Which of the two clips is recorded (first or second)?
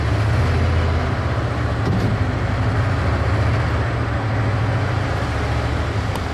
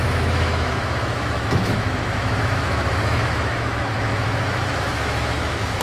first